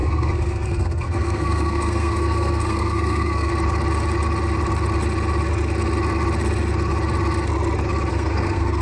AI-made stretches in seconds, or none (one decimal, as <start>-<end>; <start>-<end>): 0.0-3.5; 8.1-8.8